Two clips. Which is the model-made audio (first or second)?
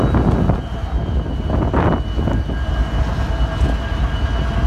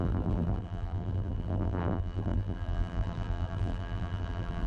second